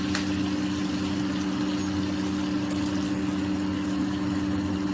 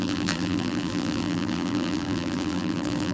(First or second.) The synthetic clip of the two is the second